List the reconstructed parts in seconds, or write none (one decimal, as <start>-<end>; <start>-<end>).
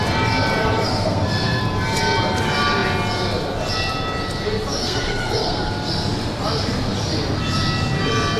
0.6-1.6; 4.8-5.7